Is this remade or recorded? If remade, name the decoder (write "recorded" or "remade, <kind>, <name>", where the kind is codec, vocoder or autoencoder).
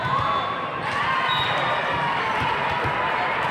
recorded